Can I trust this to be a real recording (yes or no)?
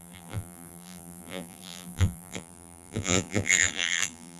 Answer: no